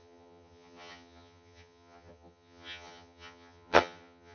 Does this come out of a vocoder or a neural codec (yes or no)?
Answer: yes